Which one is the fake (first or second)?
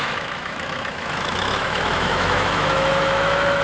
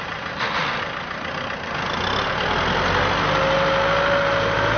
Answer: first